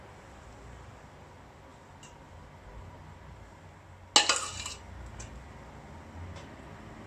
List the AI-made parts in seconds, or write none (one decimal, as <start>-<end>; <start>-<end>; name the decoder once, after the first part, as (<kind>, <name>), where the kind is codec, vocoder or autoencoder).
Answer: none